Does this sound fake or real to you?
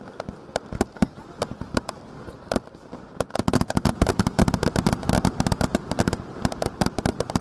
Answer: real